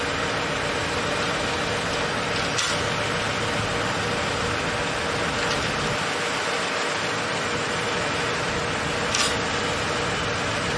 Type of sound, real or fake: real